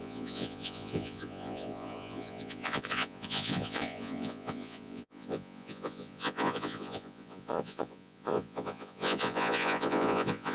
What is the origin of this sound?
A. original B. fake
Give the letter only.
B